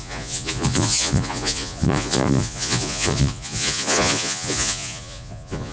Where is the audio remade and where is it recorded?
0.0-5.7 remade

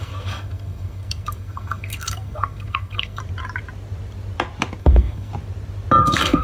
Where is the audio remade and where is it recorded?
0.0-3.2 remade; 3.2-4.8 recorded; 4.8-5.3 remade; 5.3-6.0 recorded; 6.0-6.4 remade